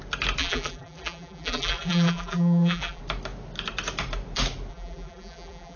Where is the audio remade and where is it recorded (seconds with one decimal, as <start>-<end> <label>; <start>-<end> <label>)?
0.0-0.4 recorded; 0.4-3.0 remade; 3.0-4.7 recorded; 4.7-5.8 remade